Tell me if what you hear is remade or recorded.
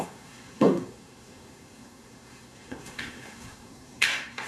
remade